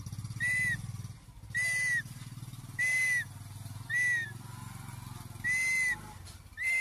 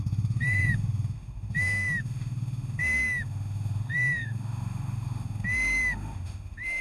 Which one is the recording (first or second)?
first